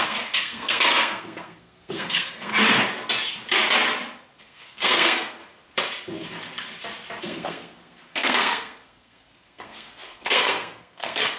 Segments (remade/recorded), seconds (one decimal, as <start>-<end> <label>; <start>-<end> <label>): 0.0-2.5 remade; 2.5-4.4 recorded; 4.4-5.4 remade; 5.4-7.2 recorded; 7.2-11.4 remade